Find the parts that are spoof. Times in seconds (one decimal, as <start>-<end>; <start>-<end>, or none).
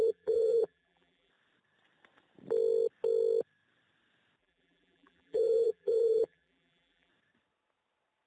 0.0-1.3; 4.4-7.1